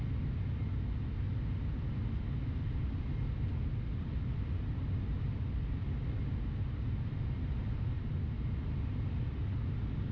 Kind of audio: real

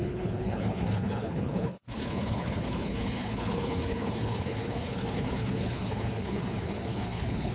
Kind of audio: fake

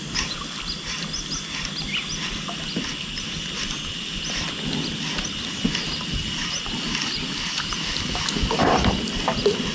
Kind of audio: real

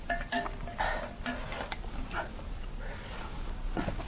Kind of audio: real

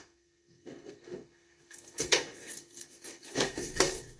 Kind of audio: fake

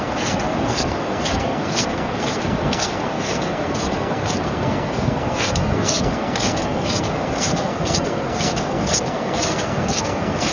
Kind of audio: fake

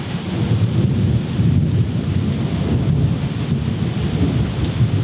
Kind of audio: real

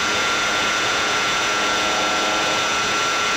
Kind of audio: fake